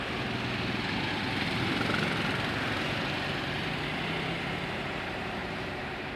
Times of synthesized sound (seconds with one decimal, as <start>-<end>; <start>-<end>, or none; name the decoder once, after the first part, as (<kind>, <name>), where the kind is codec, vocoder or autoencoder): 5.4-6.2 (vocoder, BigVGAN v2)